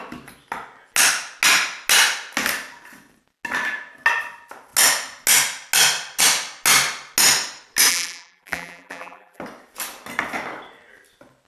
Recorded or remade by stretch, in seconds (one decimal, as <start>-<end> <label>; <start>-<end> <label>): 0.0-7.9 recorded; 7.9-9.4 remade; 9.4-11.5 recorded